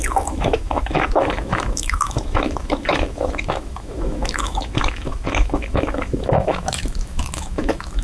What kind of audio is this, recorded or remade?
remade